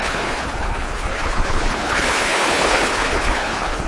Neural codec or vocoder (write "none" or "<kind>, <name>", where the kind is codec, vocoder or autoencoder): codec, HILCodec